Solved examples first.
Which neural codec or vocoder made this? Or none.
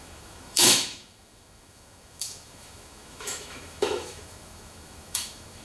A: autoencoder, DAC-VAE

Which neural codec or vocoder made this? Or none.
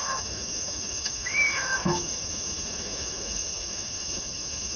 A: autoencoder, DAC-VAE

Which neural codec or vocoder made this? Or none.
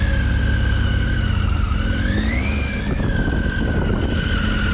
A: none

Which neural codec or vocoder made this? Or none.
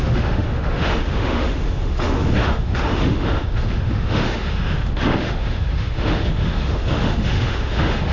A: autoencoder, DAC-VAE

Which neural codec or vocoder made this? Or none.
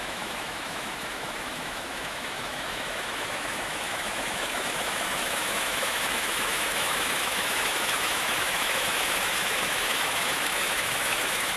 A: autoencoder, DAC-VAE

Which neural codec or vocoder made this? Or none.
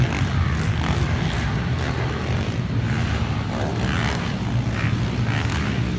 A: none